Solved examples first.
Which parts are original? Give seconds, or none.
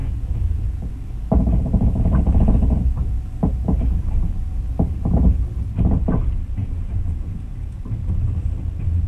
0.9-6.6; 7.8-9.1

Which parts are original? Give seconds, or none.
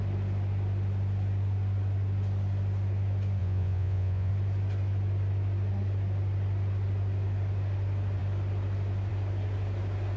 0.0-3.4; 4.3-10.2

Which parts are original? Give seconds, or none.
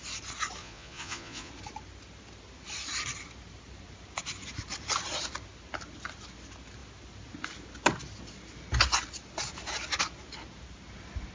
0.0-0.6; 1.5-11.3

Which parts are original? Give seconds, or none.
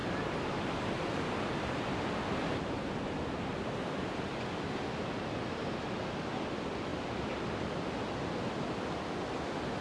0.0-9.8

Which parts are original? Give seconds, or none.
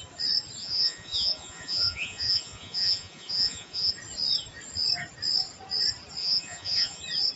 0.0-0.6; 3.9-6.2; 7.0-7.4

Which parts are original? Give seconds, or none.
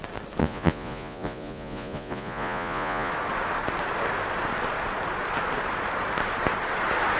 0.0-0.4; 3.1-7.2